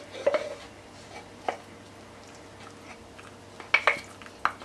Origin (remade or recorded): recorded